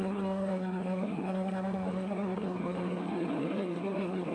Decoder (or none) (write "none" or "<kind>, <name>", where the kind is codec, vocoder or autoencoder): codec, SNAC